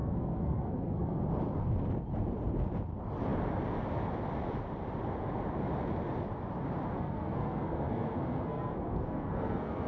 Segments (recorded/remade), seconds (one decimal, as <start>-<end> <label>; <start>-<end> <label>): 0.0-1.2 remade; 1.2-6.9 recorded; 6.9-9.9 remade